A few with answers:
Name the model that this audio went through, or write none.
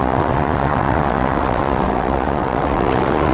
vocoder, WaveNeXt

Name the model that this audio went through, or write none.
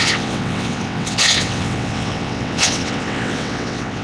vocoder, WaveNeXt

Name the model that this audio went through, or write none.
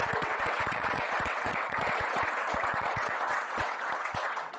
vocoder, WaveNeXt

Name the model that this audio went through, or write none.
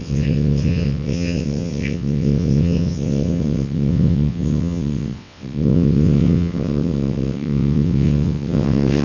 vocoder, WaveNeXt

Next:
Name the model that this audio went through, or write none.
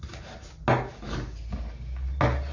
none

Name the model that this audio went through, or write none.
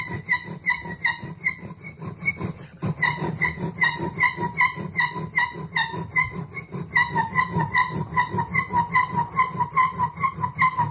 none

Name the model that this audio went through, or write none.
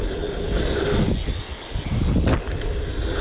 none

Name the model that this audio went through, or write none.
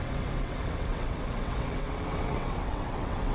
vocoder, WaveNeXt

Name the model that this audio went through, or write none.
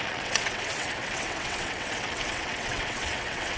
vocoder, WaveNeXt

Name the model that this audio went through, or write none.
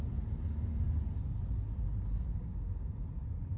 none